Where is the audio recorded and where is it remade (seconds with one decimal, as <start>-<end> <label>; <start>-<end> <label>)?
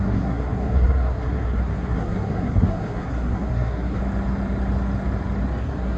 0.0-4.0 remade; 4.0-5.6 recorded; 5.6-6.0 remade